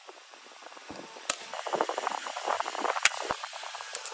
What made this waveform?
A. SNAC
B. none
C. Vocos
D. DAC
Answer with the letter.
B